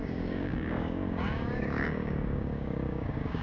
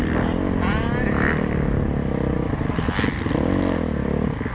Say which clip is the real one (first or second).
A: second